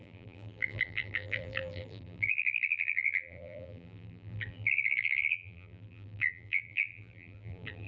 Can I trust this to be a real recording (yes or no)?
no